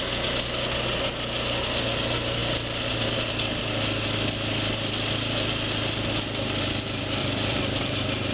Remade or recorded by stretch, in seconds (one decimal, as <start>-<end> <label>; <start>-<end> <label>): 0.0-7.2 recorded; 7.2-7.8 remade; 7.8-8.3 recorded